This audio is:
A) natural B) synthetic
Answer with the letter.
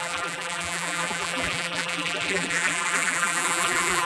B